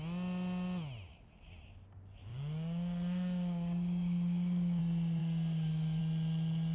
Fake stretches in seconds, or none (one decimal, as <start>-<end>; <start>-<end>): 2.3-4.8; 5.2-6.0